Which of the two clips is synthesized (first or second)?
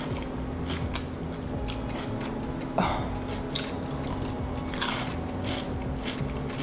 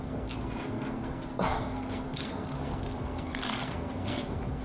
second